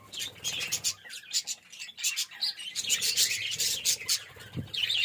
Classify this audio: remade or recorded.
recorded